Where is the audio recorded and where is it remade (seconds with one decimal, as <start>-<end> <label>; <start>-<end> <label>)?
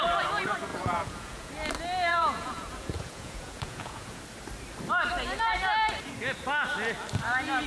0.0-0.7 recorded; 0.7-1.5 remade; 1.5-2.1 recorded; 2.1-4.2 remade; 4.2-7.7 recorded